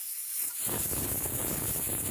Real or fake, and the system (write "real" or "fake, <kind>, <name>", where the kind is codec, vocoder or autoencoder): fake, codec, DAC